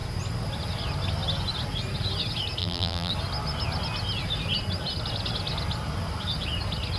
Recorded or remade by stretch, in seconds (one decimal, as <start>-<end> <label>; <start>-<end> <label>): 0.0-2.6 recorded; 2.6-3.1 remade; 3.1-7.0 recorded